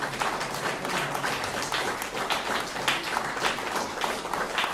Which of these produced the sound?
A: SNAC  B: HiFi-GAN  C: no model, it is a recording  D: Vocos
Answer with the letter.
C